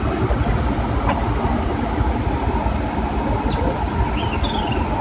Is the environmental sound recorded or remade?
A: recorded